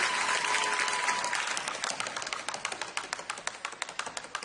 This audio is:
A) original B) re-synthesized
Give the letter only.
A